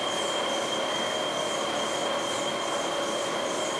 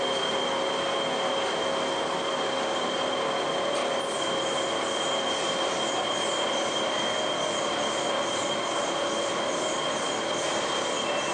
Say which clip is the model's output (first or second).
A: first